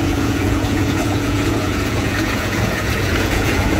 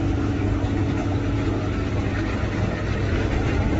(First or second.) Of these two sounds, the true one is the second